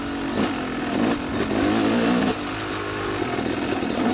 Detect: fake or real real